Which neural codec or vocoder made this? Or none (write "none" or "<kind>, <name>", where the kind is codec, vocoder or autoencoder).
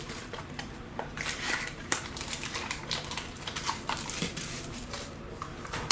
vocoder, BigVGAN v2